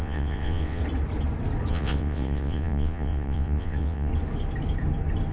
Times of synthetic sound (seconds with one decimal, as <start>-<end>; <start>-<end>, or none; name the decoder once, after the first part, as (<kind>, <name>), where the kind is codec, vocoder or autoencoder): 0.0-0.8 (vocoder, WaveNeXt); 1.7-4.1